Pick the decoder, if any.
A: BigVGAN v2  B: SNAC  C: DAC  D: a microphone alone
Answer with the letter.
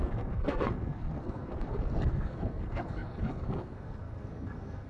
B